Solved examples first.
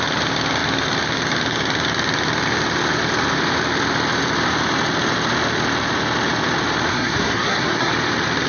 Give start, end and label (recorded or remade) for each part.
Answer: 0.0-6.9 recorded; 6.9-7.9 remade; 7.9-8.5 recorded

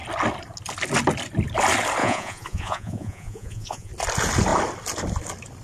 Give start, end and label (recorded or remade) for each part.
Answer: 0.0-2.0 recorded; 2.0-3.9 remade; 3.9-5.6 recorded

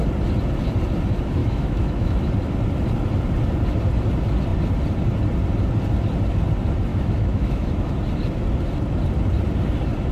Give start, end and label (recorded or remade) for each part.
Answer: 0.0-1.4 recorded; 1.4-2.3 remade; 2.3-6.9 recorded; 6.9-7.9 remade; 7.9-10.1 recorded

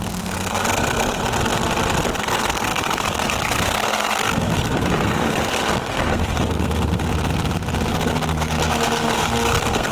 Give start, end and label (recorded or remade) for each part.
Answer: 0.0-1.2 remade; 1.2-2.2 recorded; 2.2-7.1 remade; 7.1-7.9 recorded; 7.9-9.9 remade

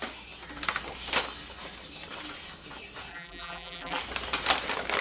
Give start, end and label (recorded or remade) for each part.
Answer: 0.0-3.1 recorded; 3.1-4.0 remade; 4.0-5.0 recorded

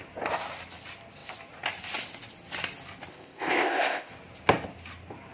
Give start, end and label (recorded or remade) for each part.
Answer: 0.0-3.1 recorded; 3.1-4.1 remade; 4.1-5.3 recorded

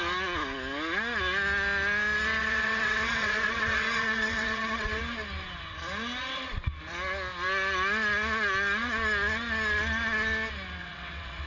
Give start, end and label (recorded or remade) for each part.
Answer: 0.0-2.4 recorded; 2.4-5.0 remade; 5.0-10.8 recorded; 10.8-11.5 remade

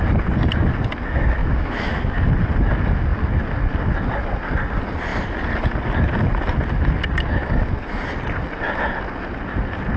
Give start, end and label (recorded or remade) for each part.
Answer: 0.0-1.4 recorded; 1.4-2.1 remade; 2.1-10.0 recorded